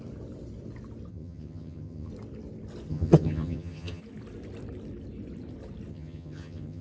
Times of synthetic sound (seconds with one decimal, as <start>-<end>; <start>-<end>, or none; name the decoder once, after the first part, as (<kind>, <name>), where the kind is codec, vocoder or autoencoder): 1.1-2.1 (vocoder, HiFi-GAN); 2.9-4.0; 5.9-6.8